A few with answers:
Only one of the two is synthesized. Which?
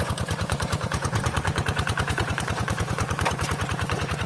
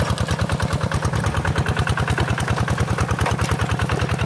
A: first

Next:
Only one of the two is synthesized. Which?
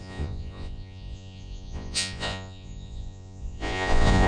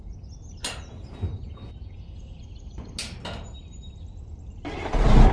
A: first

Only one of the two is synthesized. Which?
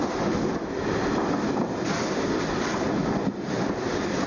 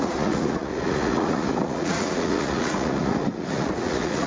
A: second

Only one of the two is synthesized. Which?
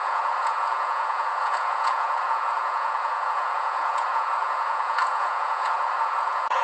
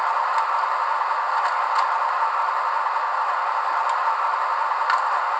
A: first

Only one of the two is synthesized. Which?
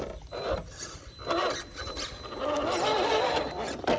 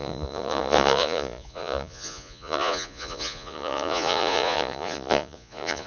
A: second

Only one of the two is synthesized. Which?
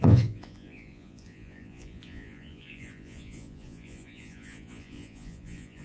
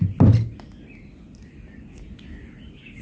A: first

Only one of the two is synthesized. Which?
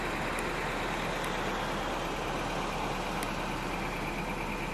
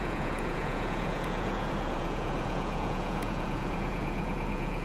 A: second